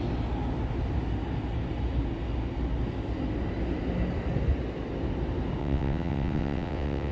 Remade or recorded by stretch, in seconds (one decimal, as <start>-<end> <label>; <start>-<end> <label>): 0.0-5.6 recorded; 5.6-7.1 remade

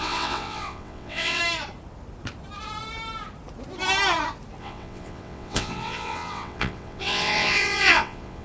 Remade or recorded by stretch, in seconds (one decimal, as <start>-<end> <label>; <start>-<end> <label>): 0.0-1.4 remade; 1.4-4.6 recorded; 4.6-8.4 remade

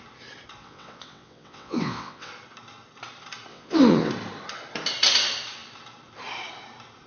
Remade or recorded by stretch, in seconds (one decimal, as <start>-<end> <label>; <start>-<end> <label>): 0.0-0.6 recorded; 0.6-2.3 remade; 2.3-3.5 recorded; 3.5-4.1 remade; 4.1-7.1 recorded

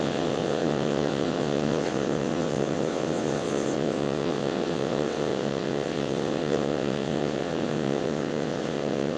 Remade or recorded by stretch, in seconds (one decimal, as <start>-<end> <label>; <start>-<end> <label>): 0.0-9.2 remade

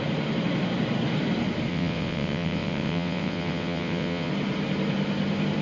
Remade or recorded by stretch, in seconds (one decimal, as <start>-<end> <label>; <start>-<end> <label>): 0.0-1.7 recorded; 1.7-4.3 remade; 4.3-5.6 recorded

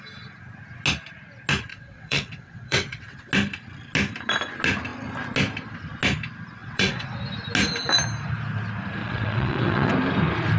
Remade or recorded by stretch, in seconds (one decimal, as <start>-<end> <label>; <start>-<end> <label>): 0.0-1.7 recorded; 1.7-3.3 remade; 3.3-6.6 recorded; 6.6-7.2 remade; 7.2-9.0 recorded; 9.0-9.9 remade; 9.9-10.6 recorded

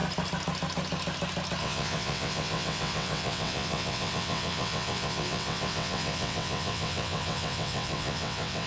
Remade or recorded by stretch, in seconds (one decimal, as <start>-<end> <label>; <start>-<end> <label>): 0.0-1.6 recorded; 1.6-8.7 remade